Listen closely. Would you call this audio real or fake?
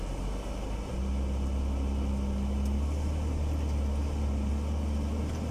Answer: real